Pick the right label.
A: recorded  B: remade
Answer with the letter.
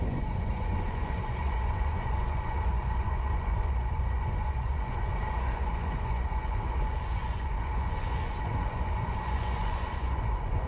B